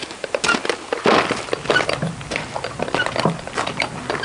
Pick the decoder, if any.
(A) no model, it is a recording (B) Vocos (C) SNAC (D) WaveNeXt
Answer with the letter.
A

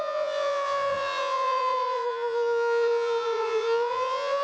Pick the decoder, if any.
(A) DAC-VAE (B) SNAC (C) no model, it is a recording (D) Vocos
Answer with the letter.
D